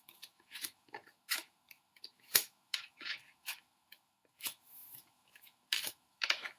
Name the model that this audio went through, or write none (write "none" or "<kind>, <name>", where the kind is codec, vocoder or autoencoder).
autoencoder, DAC-VAE